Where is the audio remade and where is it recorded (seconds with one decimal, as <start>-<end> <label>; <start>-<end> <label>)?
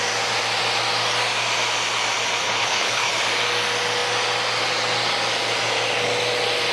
0.0-2.4 recorded; 2.4-3.1 remade; 3.1-6.7 recorded